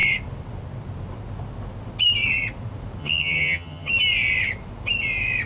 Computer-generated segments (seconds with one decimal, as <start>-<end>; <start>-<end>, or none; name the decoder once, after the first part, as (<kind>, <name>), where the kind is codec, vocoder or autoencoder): 3.0-3.9 (vocoder, HiFi-GAN)